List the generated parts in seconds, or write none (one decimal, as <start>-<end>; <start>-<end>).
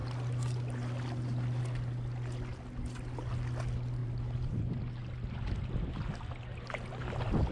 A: 4.0-4.6